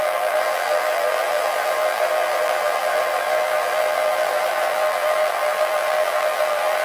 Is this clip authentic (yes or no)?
no